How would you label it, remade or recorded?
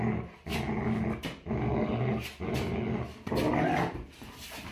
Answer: recorded